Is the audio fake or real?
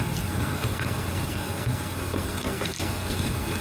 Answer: fake